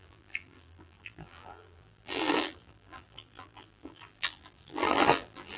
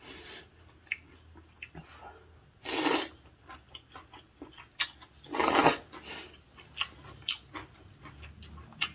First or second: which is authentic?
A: second